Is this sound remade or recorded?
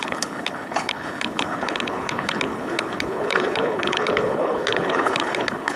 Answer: remade